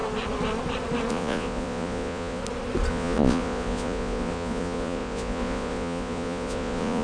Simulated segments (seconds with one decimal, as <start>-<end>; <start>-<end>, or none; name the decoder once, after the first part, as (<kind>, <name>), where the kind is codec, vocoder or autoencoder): 1.1-2.4 (vocoder, Vocos); 2.9-7.0